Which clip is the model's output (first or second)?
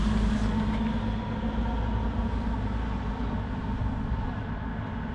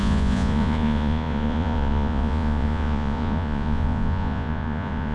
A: second